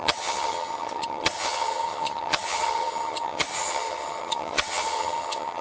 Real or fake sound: fake